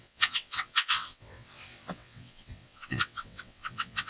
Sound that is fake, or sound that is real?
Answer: fake